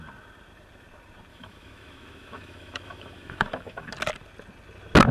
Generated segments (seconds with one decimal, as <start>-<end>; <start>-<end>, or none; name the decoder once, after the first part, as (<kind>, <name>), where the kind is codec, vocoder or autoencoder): 1.3-3.9 (autoencoder, DAC-VAE)

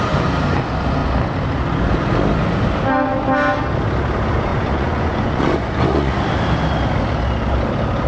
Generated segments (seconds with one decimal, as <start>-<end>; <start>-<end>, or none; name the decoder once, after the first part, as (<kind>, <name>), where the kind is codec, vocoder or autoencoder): 4.5-6.1 (vocoder, Vocos)

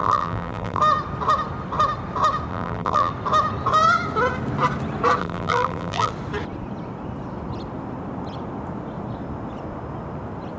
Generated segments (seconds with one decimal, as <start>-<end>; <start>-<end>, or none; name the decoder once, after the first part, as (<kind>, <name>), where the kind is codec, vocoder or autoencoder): 0.0-0.8 (vocoder, BigVGAN v2); 2.5-3.1; 5.2-6.1